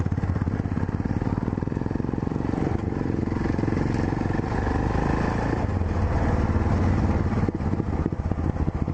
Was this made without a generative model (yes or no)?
yes